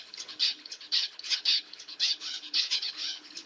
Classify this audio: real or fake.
fake